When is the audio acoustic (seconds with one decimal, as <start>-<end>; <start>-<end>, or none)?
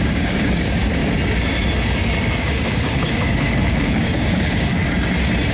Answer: 1.0-2.4; 4.7-5.5